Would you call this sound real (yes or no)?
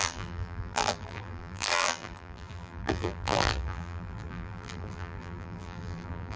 no